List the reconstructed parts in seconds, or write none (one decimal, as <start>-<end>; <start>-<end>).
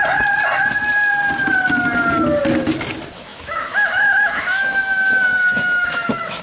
3.3-6.4